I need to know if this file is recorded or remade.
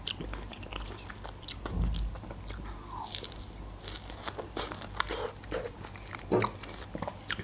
recorded